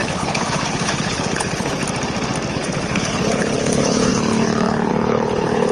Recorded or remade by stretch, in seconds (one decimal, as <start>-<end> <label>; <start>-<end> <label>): 0.0-1.8 remade; 1.8-2.5 recorded; 2.5-5.7 remade